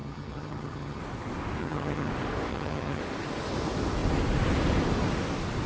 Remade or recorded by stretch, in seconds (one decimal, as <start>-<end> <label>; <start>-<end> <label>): 0.0-1.0 remade; 1.0-1.6 recorded; 1.6-2.1 remade; 2.1-2.5 recorded; 2.5-3.0 remade; 3.0-5.7 recorded